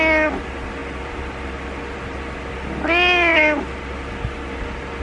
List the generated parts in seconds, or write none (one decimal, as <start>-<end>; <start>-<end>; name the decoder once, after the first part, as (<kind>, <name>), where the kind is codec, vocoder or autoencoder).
0.8-1.8 (vocoder, BigVGAN v2); 3.3-3.9